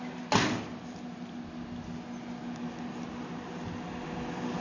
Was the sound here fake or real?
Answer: real